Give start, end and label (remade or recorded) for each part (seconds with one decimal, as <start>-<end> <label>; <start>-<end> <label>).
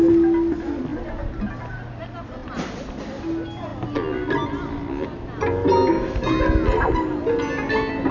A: 0.0-8.1 recorded